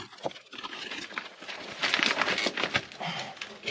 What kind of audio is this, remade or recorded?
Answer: recorded